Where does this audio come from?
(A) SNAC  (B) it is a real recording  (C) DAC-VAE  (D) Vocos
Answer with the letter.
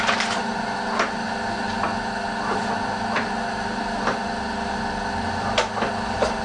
B